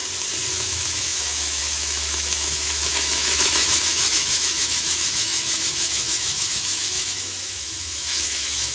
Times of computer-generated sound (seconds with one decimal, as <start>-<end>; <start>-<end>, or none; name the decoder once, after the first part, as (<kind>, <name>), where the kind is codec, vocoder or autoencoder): 0.5-8.7 (autoencoder, DAC-VAE)